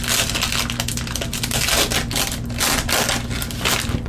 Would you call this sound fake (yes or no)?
no